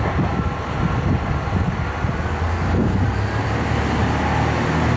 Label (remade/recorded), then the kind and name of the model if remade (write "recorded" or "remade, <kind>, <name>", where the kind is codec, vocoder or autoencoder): recorded